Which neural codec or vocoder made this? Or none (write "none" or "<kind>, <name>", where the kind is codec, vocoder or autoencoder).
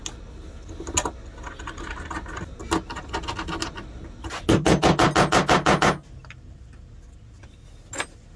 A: none